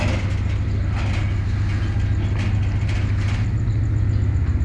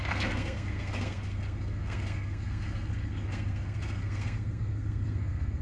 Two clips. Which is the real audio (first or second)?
first